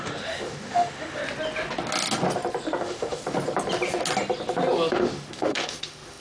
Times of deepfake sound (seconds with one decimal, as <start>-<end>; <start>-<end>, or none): 0.0-1.2; 2.8-3.2; 4.9-6.2